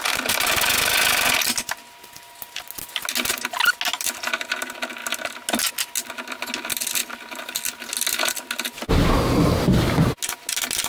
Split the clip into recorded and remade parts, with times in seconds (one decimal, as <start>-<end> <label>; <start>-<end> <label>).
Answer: 0.0-10.9 recorded